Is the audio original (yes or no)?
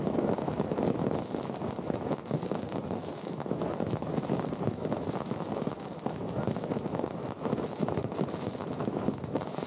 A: no